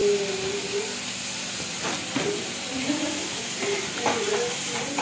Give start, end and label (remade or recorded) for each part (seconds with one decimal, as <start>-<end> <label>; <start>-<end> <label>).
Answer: 0.0-5.0 recorded